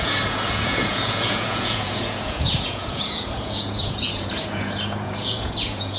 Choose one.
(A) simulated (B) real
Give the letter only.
A